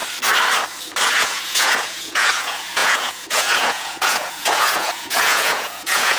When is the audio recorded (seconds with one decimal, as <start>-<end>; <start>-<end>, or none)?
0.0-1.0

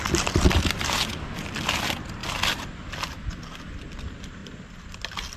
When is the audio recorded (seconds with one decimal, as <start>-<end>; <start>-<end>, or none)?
0.0-5.4

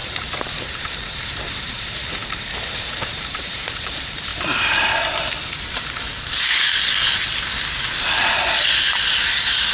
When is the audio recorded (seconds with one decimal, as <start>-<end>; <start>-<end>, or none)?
4.3-5.5; 6.1-9.7

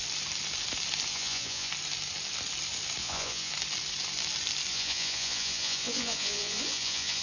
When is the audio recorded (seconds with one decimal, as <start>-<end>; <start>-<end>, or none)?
0.0-1.1; 1.7-3.0; 3.5-4.7

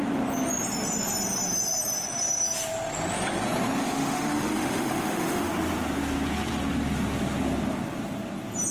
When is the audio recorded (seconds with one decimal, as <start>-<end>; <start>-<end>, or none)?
0.0-3.8; 5.5-8.7

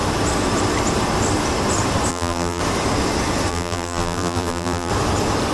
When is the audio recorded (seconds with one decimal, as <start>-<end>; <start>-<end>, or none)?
0.0-2.1; 2.6-3.5; 4.9-5.5

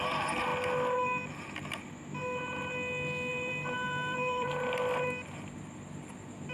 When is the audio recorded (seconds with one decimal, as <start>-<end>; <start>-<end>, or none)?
0.0-3.3; 4.5-6.5

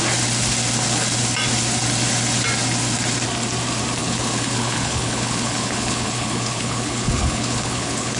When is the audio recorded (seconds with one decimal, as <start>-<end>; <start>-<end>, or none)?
0.0-4.0